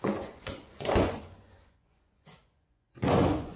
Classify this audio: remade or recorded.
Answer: remade